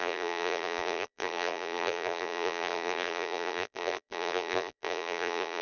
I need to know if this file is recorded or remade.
remade